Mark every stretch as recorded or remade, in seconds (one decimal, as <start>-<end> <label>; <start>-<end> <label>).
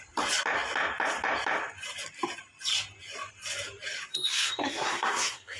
0.0-4.1 recorded; 4.1-5.6 remade